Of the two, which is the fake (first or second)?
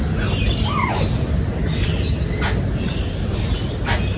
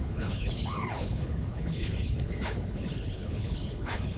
second